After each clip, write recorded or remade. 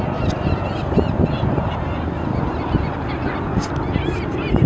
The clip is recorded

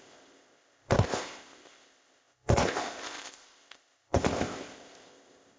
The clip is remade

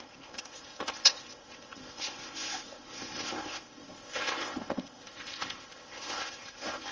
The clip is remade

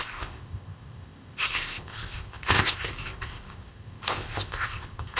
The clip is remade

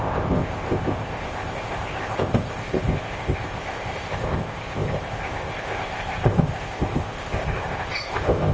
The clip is remade